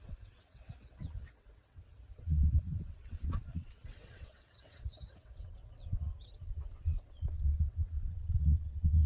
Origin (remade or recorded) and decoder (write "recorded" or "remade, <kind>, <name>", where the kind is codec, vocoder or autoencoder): remade, vocoder, WaveNeXt